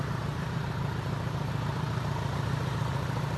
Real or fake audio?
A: fake